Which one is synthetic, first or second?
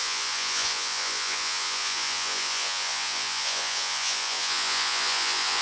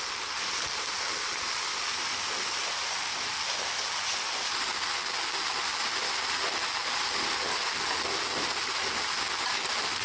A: first